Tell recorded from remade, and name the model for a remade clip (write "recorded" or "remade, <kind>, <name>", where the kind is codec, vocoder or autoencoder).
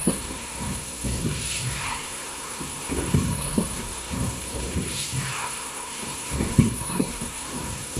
remade, codec, SNAC